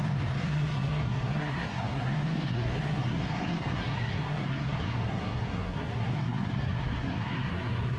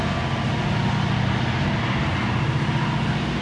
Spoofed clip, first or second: first